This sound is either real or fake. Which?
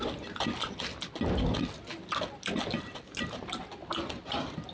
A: real